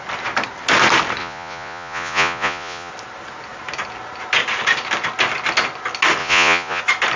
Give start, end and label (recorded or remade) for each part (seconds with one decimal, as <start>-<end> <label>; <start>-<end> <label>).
0.0-1.2 recorded; 1.2-2.9 remade; 2.9-6.2 recorded; 6.2-6.8 remade; 6.8-7.2 recorded